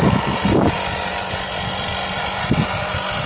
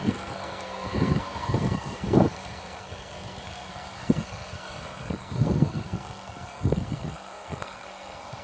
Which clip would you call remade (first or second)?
second